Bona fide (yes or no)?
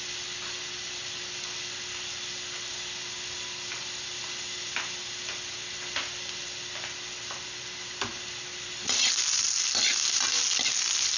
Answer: yes